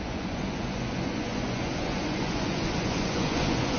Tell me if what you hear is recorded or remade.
remade